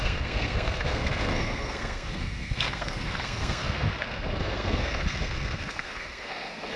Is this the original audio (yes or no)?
no